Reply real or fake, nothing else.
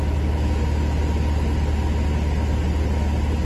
real